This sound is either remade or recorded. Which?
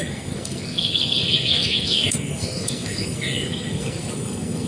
remade